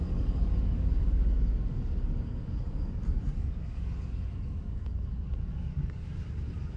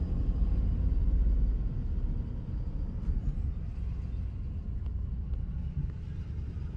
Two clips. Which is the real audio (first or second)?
second